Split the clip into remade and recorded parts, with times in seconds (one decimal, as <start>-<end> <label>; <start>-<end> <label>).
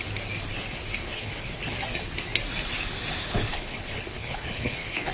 0.0-1.0 recorded; 1.0-1.6 remade; 1.6-3.2 recorded; 3.2-5.1 remade